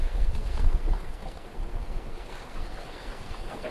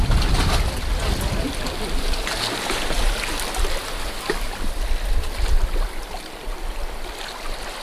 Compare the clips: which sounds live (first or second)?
second